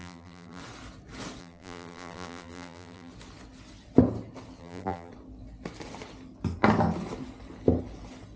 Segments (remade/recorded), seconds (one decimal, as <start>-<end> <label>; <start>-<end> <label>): 0.0-0.6 remade; 0.6-1.4 recorded; 1.4-3.1 remade; 3.1-4.6 recorded; 4.6-5.1 remade; 5.1-8.4 recorded